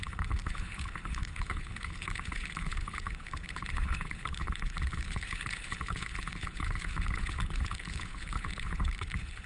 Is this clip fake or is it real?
fake